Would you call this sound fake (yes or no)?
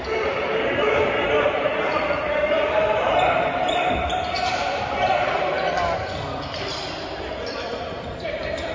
yes